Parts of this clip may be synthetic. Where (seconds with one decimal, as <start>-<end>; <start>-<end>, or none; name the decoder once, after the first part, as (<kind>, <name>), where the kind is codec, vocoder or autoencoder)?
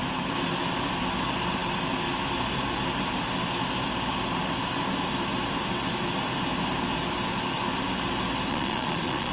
8.5-9.3 (vocoder, Vocos)